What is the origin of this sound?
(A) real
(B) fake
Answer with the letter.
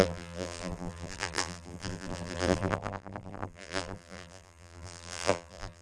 B